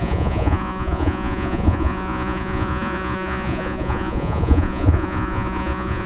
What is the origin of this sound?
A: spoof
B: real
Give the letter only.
A